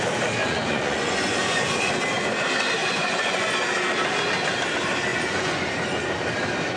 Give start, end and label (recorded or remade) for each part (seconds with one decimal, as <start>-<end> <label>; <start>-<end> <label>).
0.0-0.4 recorded; 0.4-1.9 remade; 1.9-2.8 recorded; 2.8-3.5 remade; 3.5-5.1 recorded; 5.1-5.7 remade; 5.7-6.8 recorded